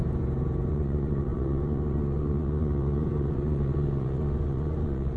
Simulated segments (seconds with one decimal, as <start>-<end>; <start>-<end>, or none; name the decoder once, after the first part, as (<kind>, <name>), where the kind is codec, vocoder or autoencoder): 0.7-5.2 (vocoder, Vocos)